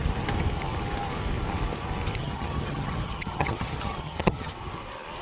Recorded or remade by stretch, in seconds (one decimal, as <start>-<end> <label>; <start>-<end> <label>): 0.0-2.2 recorded; 2.2-4.5 remade; 4.5-5.2 recorded